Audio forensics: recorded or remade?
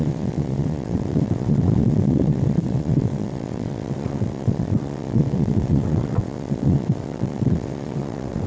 remade